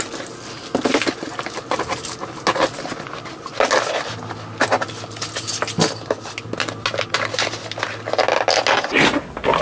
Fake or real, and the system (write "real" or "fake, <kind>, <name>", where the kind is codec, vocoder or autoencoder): real